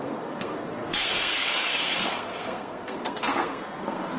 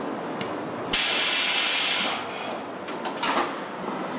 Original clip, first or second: second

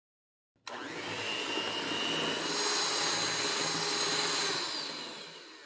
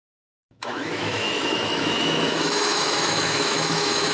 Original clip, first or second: first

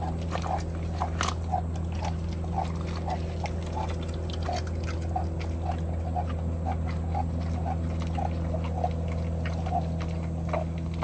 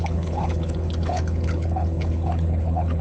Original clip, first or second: first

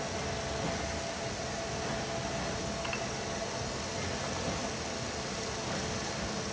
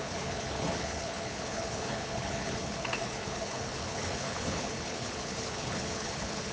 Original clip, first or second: first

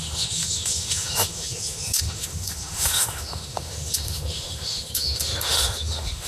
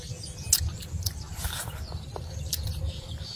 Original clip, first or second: second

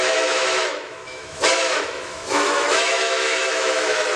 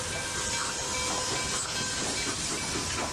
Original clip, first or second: second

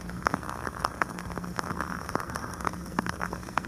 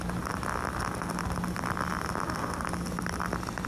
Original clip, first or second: second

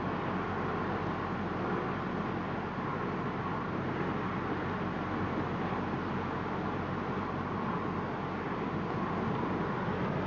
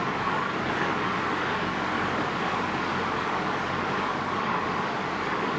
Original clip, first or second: first